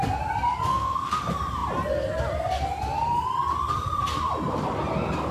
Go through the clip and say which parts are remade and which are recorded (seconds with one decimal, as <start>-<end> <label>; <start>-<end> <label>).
0.0-0.7 recorded; 0.7-1.2 remade; 1.2-5.3 recorded